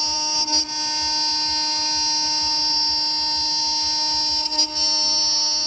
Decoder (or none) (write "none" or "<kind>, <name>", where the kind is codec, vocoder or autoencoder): none